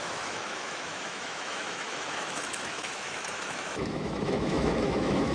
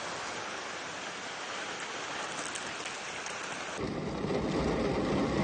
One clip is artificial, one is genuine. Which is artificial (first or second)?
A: first